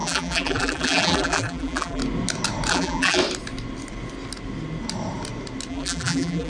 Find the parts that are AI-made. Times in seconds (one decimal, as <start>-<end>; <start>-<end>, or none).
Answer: 0.0-2.0; 2.7-3.2; 5.7-6.5